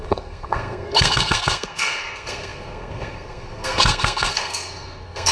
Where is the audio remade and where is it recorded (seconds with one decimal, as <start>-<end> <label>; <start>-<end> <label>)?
0.0-5.3 remade